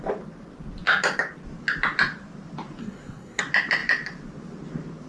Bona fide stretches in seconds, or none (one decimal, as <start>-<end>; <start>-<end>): 0.0-2.8; 3.4-5.1